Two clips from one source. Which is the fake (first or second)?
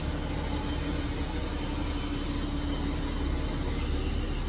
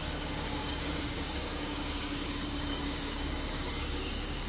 second